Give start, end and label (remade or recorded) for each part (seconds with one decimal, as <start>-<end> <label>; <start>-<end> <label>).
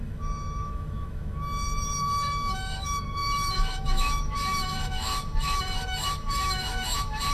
0.0-7.3 remade